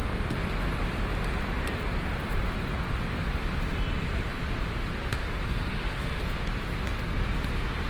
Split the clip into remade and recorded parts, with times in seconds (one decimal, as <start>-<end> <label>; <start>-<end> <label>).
0.0-5.1 recorded; 5.1-6.2 remade; 6.2-7.9 recorded